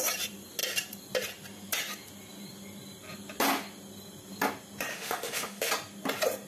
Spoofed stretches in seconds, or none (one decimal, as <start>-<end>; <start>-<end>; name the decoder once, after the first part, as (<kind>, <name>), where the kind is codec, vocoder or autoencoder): 4.9-5.7 (autoencoder, DAC-VAE)